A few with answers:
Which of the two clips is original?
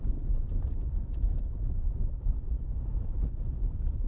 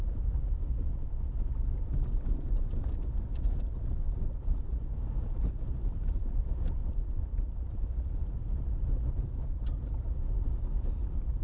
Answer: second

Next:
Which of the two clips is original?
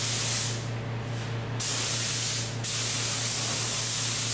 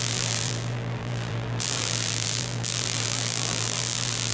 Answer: first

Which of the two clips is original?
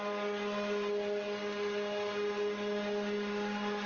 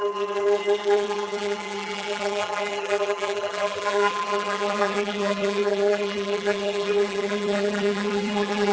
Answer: first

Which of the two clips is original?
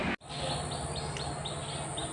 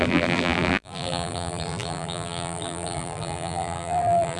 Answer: first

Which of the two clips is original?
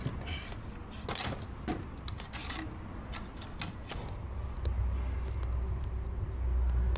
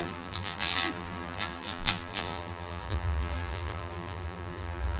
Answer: first